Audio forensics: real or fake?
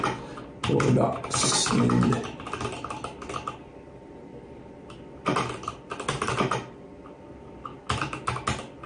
real